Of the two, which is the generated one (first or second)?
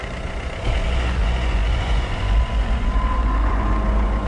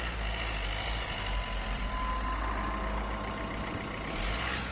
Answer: first